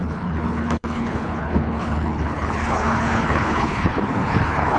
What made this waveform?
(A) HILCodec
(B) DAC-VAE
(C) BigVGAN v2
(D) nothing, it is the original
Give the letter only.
A